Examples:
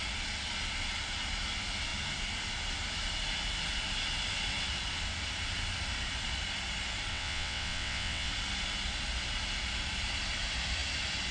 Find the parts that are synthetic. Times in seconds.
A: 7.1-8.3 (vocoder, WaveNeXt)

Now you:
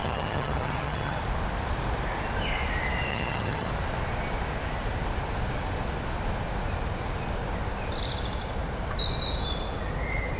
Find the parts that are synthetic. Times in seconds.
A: 0.0-1.2 (vocoder, HiFi-GAN); 3.1-3.7

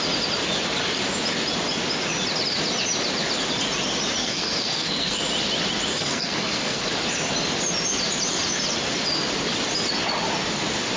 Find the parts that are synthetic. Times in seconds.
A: 4.2-5.2 (codec, SNAC); 5.9-6.9

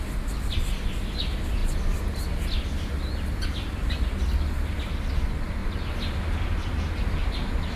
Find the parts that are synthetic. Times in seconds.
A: none